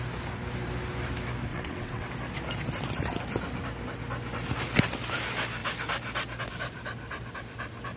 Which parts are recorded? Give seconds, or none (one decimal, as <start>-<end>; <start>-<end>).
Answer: 0.0-1.5; 2.1-8.0